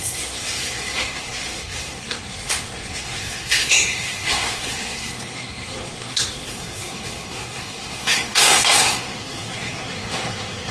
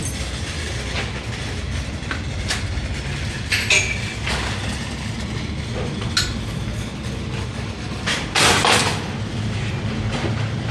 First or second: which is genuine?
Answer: second